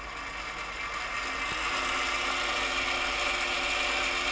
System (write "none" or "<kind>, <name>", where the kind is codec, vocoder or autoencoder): none